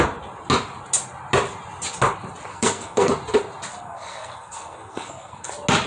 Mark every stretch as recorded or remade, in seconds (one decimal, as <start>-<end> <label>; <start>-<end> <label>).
0.0-2.5 recorded; 2.5-3.1 remade; 3.1-3.7 recorded; 3.7-5.5 remade; 5.5-5.9 recorded